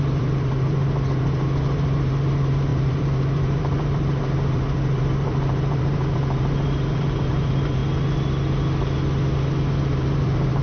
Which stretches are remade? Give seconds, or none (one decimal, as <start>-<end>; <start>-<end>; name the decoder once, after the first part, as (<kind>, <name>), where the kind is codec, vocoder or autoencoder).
0.0-7.8 (vocoder, BigVGAN v2); 9.8-10.6